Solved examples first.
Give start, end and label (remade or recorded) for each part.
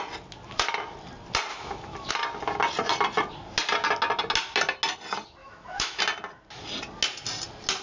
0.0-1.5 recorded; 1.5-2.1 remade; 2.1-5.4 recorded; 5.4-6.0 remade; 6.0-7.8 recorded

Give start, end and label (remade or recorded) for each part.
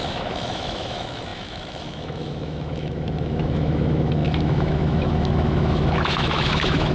0.0-6.9 remade